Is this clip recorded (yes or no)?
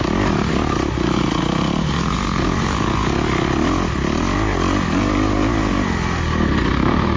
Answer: yes